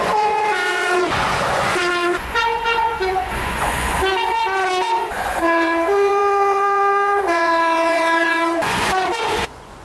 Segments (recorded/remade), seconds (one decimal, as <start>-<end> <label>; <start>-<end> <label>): 0.0-9.8 remade